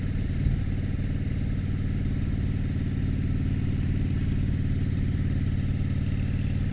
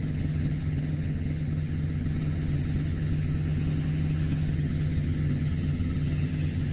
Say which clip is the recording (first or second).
first